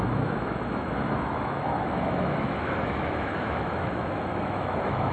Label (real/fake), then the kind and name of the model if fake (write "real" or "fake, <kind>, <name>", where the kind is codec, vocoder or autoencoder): fake, autoencoder, DAC-VAE